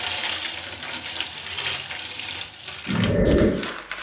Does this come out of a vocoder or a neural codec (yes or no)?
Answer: no